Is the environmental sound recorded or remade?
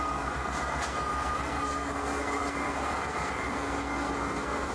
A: remade